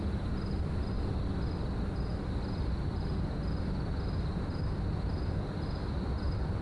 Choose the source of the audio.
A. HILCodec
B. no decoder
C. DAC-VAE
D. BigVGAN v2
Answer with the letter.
B